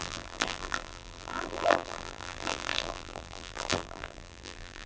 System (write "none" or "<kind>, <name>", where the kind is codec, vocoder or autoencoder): vocoder, BigVGAN v2